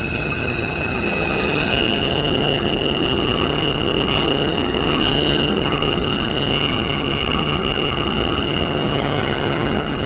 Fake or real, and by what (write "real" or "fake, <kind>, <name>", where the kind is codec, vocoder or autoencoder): fake, vocoder, HiFi-GAN